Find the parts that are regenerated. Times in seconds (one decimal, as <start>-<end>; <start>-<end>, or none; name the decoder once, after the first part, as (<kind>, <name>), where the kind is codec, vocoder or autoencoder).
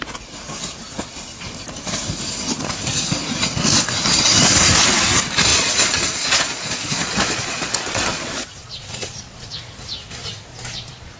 5.5-9.7 (vocoder, Vocos); 10.5-11.2